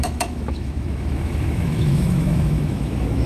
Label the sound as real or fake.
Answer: fake